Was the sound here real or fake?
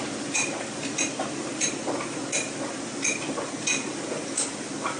real